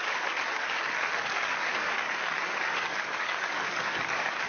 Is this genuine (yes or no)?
no